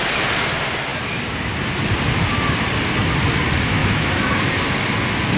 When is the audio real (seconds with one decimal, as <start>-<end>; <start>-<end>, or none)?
0.0-3.8; 4.3-5.4